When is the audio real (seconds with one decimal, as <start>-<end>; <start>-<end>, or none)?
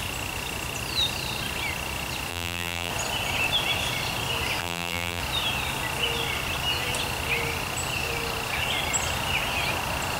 0.0-2.3; 2.9-4.6; 5.2-10.2